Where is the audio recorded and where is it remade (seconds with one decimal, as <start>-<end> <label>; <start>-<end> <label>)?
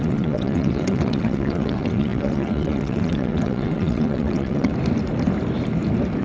0.0-4.7 remade; 4.7-6.2 recorded